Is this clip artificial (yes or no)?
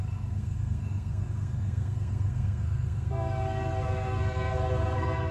yes